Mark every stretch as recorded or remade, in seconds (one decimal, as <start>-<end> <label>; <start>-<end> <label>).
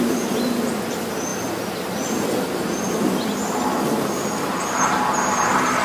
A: 0.0-5.8 recorded